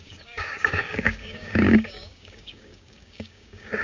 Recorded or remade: remade